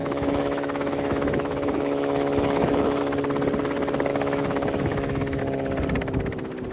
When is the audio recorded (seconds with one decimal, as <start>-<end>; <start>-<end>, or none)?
3.0-4.1; 5.4-6.7